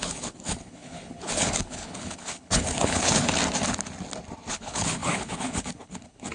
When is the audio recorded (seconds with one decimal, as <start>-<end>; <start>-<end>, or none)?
3.4-4.5

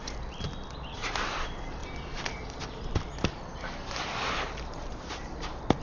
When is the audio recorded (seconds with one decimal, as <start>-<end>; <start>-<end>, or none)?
0.0-5.8

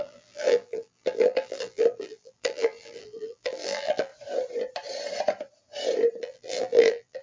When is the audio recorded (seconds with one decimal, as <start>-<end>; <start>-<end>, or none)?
4.1-6.2

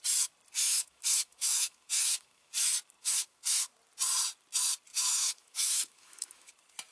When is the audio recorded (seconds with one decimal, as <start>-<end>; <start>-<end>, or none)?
0.0-0.6; 2.5-3.0; 3.7-4.9; 6.5-6.9

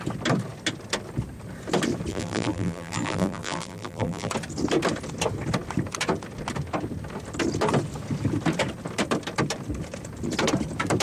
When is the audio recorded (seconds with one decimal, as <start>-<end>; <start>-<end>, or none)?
0.0-2.1; 4.3-11.0

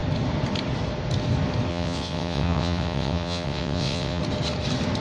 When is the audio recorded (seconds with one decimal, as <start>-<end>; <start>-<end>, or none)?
0.0-1.7; 4.2-5.0